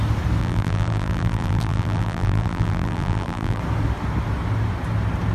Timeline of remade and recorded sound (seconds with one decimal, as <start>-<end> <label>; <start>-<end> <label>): 0.0-0.4 recorded; 0.4-3.6 remade; 3.6-5.3 recorded